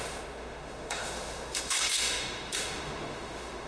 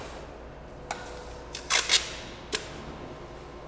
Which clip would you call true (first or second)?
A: second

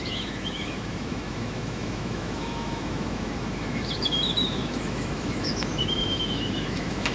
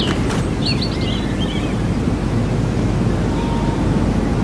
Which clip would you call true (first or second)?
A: second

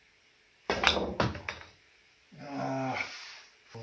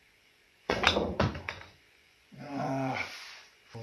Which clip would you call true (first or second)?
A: first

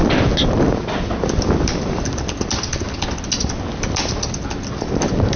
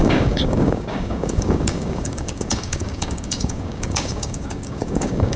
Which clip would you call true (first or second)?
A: first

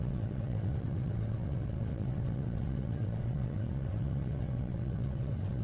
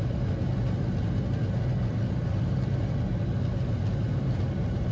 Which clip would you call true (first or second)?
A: second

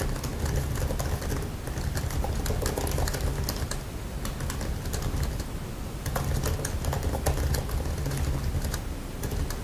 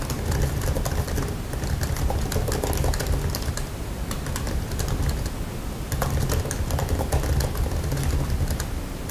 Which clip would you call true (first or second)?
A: first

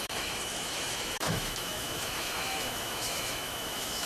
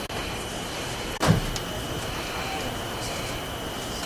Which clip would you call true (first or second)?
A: second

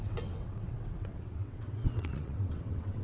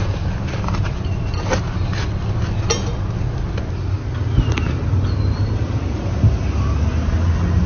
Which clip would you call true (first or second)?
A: second